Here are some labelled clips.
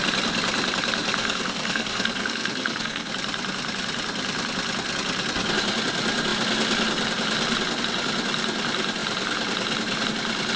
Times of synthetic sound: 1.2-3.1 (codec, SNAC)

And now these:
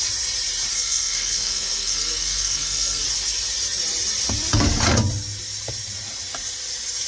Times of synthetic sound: 0.7-3.0 (codec, SNAC)

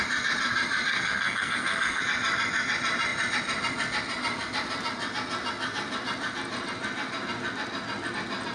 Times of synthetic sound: 0.9-2.0 (codec, SNAC)

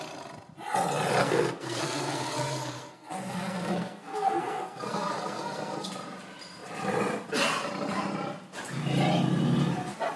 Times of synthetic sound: 1.2-5.9 (codec, SNAC)

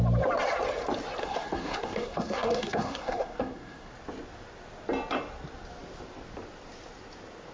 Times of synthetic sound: 1.2-3.9 (codec, SNAC)